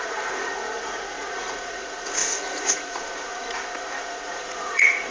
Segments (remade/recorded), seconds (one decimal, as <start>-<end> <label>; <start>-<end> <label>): 0.0-5.1 remade